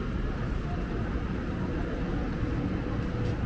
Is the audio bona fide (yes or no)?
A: yes